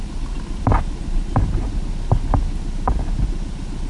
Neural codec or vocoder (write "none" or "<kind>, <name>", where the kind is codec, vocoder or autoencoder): none